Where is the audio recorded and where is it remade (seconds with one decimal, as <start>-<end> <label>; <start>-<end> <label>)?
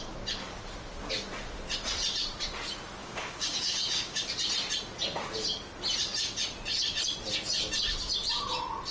0.0-3.0 recorded; 3.0-4.3 remade; 4.3-8.9 recorded